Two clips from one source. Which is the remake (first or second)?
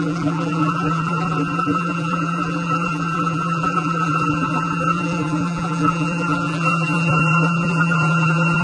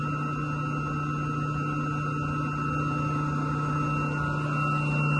first